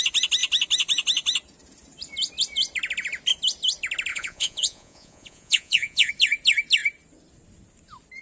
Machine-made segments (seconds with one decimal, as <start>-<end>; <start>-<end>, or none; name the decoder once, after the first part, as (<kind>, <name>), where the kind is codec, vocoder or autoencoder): 4.1-6.1 (vocoder, Vocos)